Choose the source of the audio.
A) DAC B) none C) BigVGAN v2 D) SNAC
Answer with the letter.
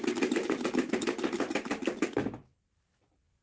B